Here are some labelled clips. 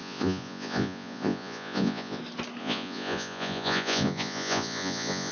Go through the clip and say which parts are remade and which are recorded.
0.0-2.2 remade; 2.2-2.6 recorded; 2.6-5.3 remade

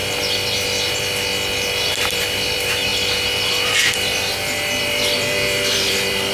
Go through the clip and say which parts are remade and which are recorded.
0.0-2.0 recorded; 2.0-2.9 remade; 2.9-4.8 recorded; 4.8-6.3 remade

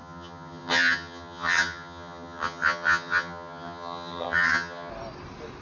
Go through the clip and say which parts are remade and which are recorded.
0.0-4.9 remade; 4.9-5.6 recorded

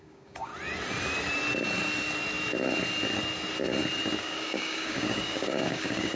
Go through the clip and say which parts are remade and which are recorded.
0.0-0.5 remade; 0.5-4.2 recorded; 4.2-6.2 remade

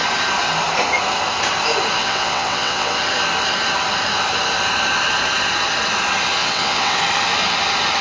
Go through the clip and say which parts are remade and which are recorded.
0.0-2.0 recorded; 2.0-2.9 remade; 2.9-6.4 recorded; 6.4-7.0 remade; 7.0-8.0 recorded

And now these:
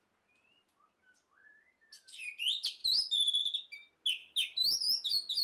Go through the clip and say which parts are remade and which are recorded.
0.0-4.2 recorded; 4.2-4.8 remade; 4.8-5.4 recorded

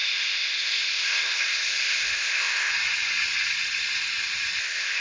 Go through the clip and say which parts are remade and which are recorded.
0.0-2.7 remade; 2.7-4.6 recorded; 4.6-5.0 remade

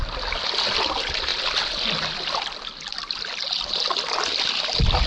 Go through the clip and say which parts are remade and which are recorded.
0.0-5.1 recorded